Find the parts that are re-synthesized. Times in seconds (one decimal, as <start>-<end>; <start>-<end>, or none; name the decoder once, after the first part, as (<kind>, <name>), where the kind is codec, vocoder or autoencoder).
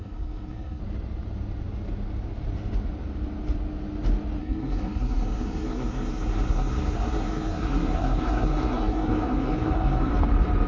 0.0-0.8 (codec, SNAC); 4.4-10.1